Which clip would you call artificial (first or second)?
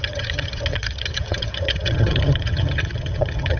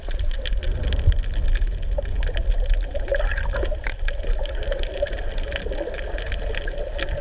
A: first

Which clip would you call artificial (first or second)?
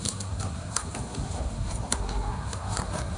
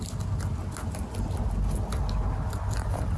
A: first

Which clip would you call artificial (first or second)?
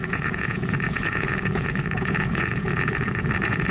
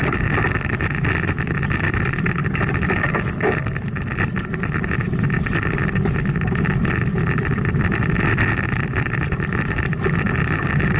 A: first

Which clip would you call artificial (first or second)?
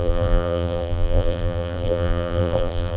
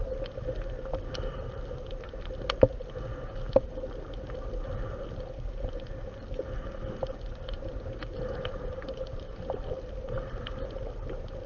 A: first